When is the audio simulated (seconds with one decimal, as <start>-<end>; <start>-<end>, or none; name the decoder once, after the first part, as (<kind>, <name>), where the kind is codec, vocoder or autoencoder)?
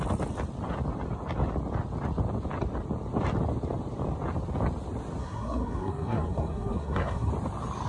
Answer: 5.2-7.3 (codec, SNAC)